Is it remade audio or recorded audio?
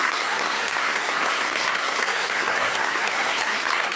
remade